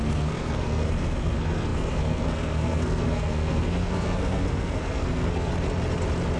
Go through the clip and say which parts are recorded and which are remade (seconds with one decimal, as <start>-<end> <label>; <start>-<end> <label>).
0.0-5.5 remade; 5.5-6.4 recorded